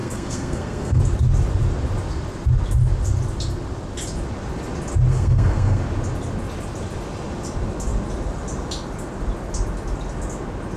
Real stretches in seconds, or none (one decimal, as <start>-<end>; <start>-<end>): 1.0-5.1; 5.8-10.8